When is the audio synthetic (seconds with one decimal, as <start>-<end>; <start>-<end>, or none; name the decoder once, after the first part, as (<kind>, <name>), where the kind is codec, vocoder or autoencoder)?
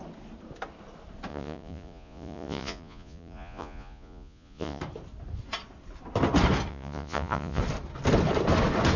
1.3-4.8 (vocoder, Vocos); 6.7-7.6